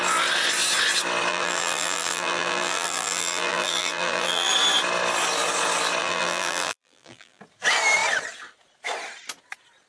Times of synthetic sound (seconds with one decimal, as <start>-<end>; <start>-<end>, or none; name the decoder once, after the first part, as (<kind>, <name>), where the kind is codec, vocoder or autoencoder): 1.3-4.5 (vocoder, BigVGAN v2); 6.0-7.4

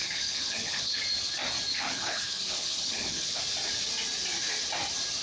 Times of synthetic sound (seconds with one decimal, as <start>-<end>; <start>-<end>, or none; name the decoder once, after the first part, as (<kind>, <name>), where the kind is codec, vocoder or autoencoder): 0.0-1.0 (codec, HILCodec); 1.7-3.4

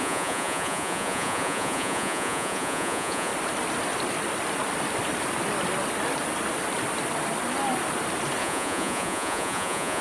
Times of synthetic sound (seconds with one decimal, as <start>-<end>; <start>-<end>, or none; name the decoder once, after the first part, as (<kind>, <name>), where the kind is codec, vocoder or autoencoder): 0.0-3.3 (vocoder, Vocos); 8.4-10.0

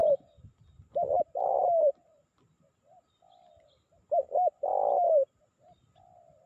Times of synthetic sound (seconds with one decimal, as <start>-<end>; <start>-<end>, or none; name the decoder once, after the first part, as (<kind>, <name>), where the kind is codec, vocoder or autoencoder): none

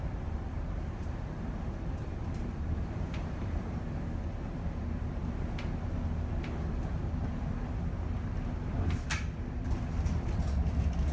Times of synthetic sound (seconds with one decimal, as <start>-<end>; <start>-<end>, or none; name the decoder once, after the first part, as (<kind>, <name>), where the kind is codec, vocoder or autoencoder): 1.0-3.8 (vocoder, BigVGAN v2)

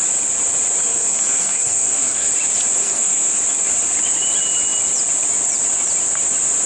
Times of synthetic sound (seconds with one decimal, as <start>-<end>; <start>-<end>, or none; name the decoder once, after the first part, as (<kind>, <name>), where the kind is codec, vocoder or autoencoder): 0.9-2.3 (codec, SNAC); 2.8-3.4